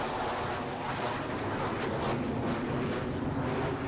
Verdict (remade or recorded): recorded